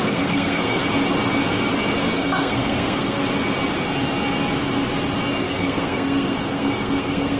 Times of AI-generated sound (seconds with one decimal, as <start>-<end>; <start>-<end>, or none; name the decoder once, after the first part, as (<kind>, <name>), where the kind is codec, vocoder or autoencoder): 0.0-0.8 (codec, SNAC); 2.0-3.2; 5.4-7.4